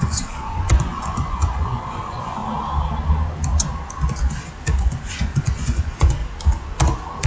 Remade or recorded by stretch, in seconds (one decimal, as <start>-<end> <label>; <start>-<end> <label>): 0.0-2.4 remade; 2.4-4.8 recorded; 4.8-6.2 remade; 6.2-7.3 recorded